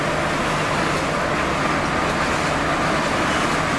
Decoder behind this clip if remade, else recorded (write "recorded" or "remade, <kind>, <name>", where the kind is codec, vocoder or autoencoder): recorded